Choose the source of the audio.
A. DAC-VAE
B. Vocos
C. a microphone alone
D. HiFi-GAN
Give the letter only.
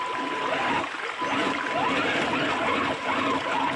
C